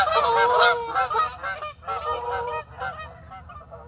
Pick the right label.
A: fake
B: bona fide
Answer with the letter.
B